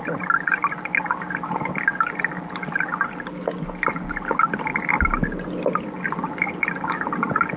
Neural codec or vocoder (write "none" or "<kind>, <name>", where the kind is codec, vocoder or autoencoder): none